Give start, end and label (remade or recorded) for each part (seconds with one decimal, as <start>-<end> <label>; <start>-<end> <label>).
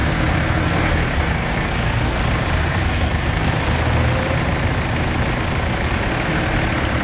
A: 0.0-2.2 remade; 2.2-2.6 recorded; 2.6-3.5 remade; 3.5-7.0 recorded